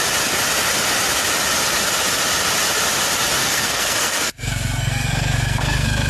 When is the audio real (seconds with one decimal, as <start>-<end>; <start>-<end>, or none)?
0.0-3.4